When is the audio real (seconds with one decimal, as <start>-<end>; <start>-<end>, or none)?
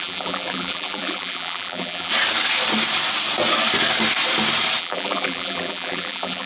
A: 2.1-4.8